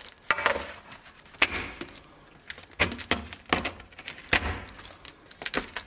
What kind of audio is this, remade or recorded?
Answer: recorded